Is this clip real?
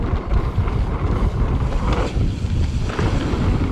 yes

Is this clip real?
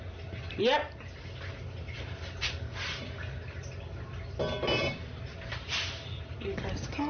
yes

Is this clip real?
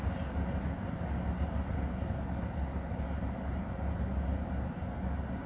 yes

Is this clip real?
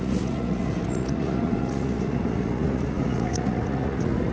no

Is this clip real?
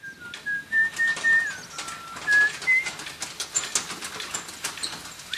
yes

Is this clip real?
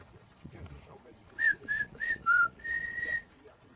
no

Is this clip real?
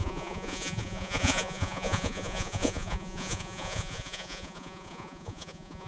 no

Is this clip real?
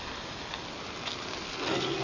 yes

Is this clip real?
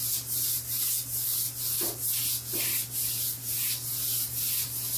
yes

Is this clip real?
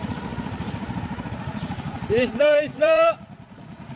no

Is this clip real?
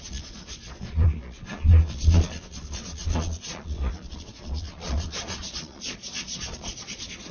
no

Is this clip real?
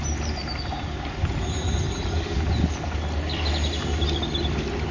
yes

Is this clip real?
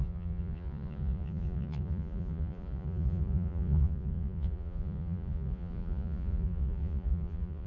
no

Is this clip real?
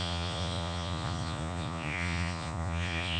no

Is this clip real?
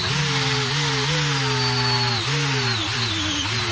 yes